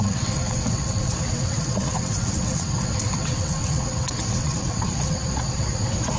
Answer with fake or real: fake